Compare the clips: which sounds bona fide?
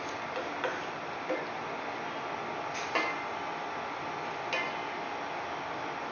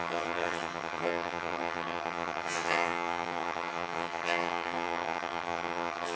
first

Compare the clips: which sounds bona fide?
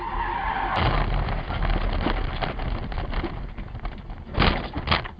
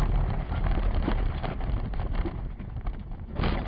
first